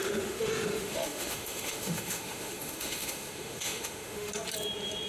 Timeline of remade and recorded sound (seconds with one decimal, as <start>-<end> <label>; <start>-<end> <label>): 0.0-4.3 remade; 4.3-5.1 recorded